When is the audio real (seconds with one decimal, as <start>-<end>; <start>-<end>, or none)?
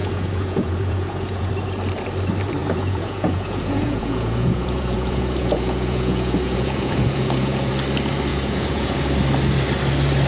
1.5-2.6; 7.7-8.3; 9.0-10.3